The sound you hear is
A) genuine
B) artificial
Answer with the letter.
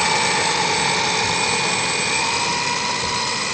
A